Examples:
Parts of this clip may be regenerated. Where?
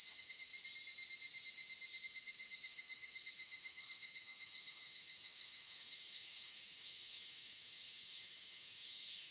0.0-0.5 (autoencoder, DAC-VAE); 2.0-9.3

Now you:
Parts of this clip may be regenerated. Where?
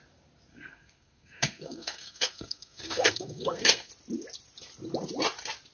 0.5-3.9 (codec, SNAC)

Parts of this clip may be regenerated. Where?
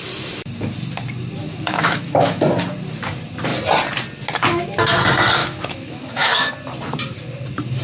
1.4-2.4 (autoencoder, DAC-VAE); 5.4-6.5